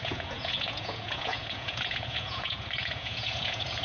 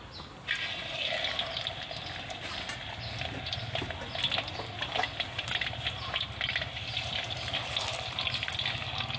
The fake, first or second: first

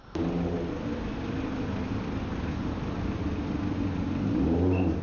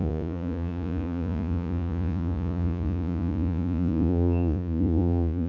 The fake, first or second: second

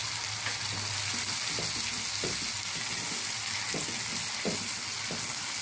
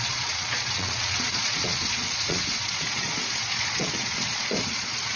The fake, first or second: second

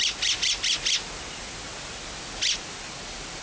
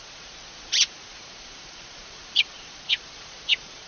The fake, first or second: second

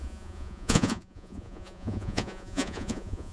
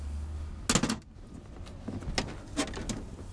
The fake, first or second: first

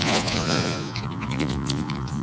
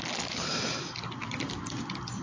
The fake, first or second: first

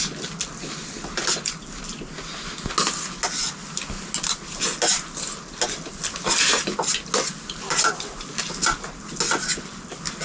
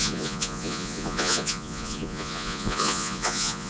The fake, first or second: second